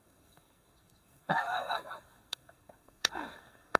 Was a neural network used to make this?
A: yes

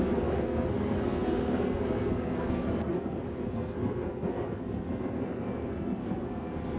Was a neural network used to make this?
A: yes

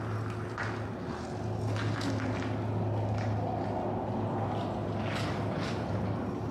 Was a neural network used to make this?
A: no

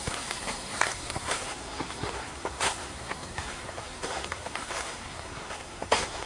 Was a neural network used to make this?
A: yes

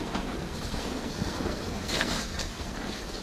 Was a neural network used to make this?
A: yes